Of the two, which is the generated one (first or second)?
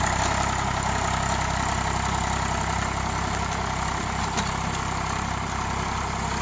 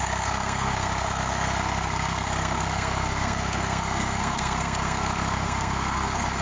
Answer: second